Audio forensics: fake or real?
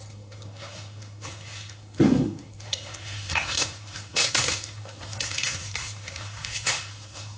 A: fake